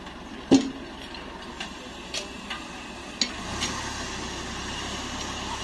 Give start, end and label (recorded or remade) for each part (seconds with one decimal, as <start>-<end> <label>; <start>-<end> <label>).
0.0-5.6 recorded

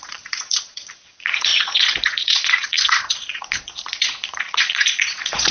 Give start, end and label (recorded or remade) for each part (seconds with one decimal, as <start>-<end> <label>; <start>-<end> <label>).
0.0-5.5 remade

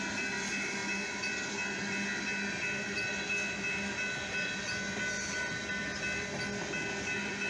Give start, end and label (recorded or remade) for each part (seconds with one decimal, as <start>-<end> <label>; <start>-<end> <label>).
0.0-7.5 recorded

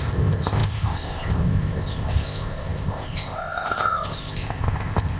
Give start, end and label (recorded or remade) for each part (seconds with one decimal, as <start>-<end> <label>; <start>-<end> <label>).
0.0-5.2 remade

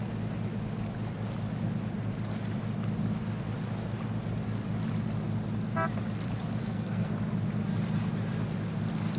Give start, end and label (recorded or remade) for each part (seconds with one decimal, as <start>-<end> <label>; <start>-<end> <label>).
0.0-6.6 recorded; 6.6-7.1 remade; 7.1-9.2 recorded

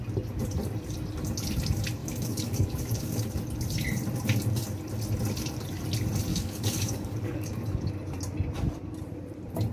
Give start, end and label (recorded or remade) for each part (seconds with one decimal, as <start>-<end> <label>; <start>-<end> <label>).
0.0-2.0 recorded; 2.0-3.2 remade; 3.2-6.3 recorded; 6.3-7.9 remade; 7.9-9.7 recorded